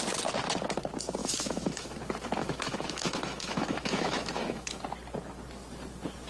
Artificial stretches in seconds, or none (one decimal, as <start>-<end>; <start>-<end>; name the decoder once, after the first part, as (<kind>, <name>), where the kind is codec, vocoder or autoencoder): 1.2-2.0 (autoencoder, DAC-VAE); 2.4-4.8

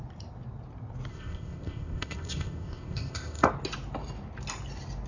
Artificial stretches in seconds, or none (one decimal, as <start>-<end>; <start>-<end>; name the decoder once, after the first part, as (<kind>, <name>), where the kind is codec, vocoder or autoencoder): 1.1-3.5 (codec, ZipCodec)